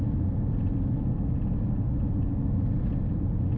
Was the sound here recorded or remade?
recorded